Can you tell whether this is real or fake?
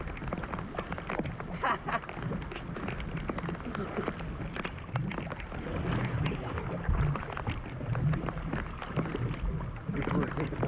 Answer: real